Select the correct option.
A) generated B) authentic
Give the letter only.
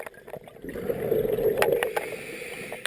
B